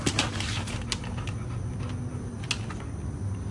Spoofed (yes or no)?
no